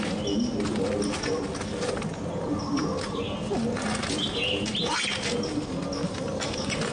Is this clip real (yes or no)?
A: yes